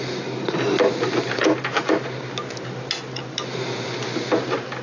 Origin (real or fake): real